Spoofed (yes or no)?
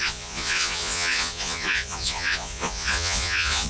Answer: yes